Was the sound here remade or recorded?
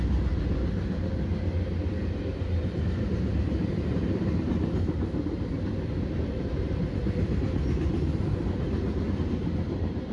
recorded